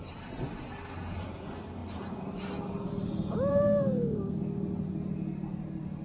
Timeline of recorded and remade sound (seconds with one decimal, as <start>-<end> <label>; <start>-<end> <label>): 0.0-3.5 recorded; 3.5-4.4 remade; 4.4-6.0 recorded